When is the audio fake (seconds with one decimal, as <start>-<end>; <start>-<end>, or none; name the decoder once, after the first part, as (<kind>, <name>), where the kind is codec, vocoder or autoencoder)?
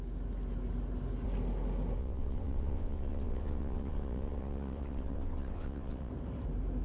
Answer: 2.0-6.1 (vocoder, WaveNeXt)